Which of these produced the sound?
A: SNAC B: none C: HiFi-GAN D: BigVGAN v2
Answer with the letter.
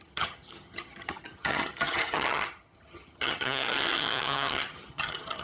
C